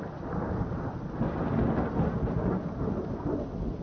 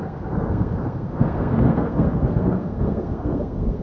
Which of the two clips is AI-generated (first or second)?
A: second